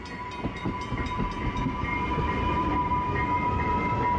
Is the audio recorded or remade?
recorded